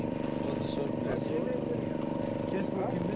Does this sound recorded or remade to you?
recorded